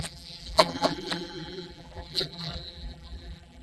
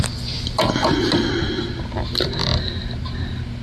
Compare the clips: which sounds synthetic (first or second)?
first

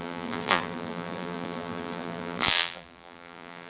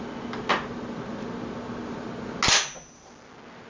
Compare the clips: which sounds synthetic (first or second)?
first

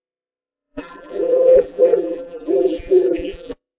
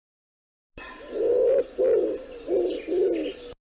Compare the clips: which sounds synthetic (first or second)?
first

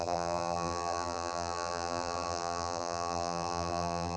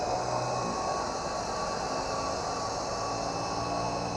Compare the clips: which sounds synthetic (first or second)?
first